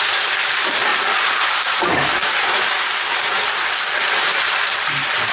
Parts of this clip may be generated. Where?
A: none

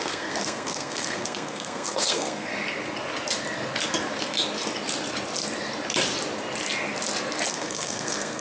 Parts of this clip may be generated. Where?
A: 0.0-2.5 (codec, SNAC); 7.5-8.4

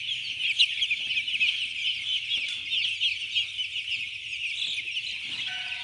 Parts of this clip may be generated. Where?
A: none

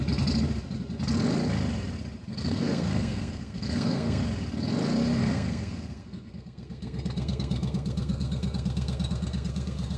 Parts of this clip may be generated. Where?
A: 2.3-4.2 (codec, SNAC); 5.2-10.0

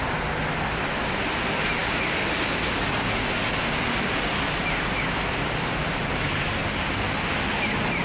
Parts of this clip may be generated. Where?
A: none

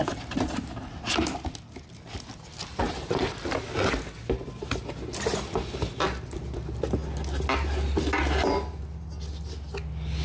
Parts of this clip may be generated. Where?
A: none

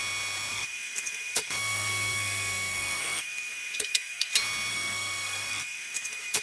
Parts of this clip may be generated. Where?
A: 0.5-4.3 (codec, SNAC); 4.7-6.4

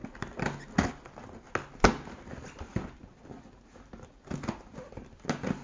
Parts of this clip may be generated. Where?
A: none